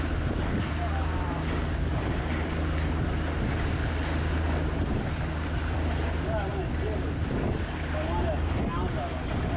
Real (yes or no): yes